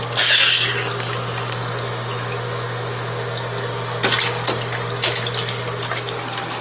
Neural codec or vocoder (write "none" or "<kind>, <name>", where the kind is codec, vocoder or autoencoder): none